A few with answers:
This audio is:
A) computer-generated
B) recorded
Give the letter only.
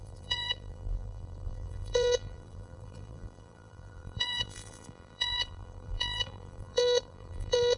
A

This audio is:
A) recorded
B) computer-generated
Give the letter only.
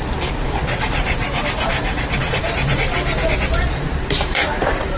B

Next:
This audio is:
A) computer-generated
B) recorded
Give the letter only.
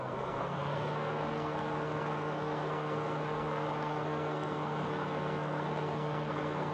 A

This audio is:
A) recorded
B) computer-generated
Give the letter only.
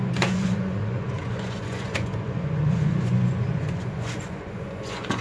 B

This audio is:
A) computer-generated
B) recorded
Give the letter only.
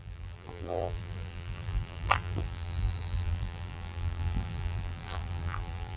A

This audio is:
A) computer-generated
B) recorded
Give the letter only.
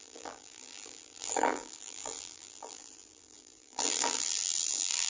A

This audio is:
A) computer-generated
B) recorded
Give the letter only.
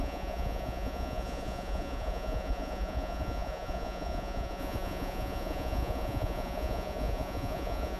A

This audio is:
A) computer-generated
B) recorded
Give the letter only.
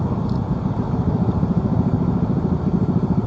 B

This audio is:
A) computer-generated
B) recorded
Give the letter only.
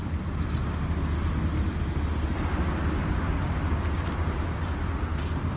B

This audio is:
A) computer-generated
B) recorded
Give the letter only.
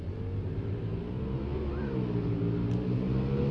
B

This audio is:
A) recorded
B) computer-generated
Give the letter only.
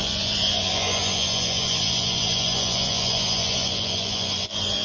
B